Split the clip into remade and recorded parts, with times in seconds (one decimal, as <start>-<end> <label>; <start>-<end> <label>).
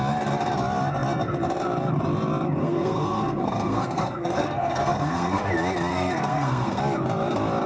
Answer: 0.0-2.6 recorded; 2.6-5.4 remade; 5.4-5.9 recorded; 5.9-6.8 remade; 6.8-7.7 recorded